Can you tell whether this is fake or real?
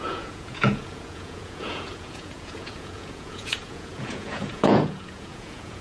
fake